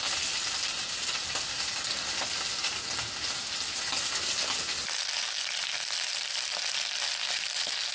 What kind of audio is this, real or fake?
real